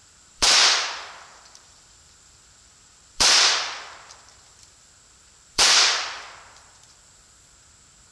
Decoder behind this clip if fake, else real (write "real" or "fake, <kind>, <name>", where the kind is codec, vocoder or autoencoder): fake, vocoder, BigVGAN v2